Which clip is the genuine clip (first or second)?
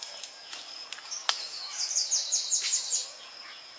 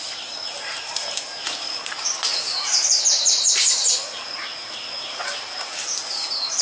first